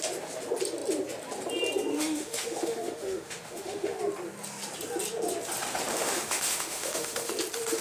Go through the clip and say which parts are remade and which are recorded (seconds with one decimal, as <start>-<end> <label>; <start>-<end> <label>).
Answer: 0.0-1.9 recorded; 1.9-4.0 remade; 4.0-5.9 recorded; 5.9-7.3 remade; 7.3-7.8 recorded